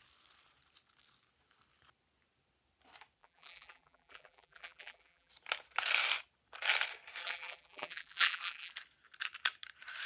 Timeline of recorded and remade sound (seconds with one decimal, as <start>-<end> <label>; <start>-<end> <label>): 0.0-3.2 recorded; 3.2-5.3 remade; 5.3-7.2 recorded; 7.2-8.7 remade; 8.7-10.1 recorded